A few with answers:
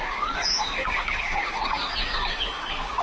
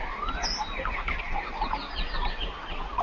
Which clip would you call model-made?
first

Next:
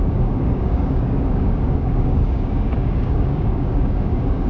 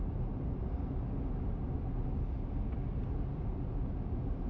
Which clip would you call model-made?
first